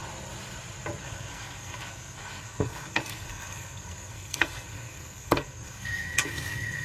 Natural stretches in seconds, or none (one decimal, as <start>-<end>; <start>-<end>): 0.0-1.0